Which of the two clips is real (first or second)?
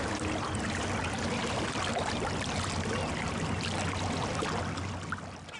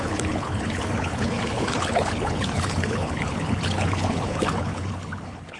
first